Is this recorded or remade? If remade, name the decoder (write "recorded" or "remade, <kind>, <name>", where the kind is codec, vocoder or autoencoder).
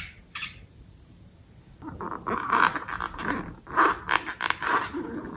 remade, vocoder, BigVGAN v2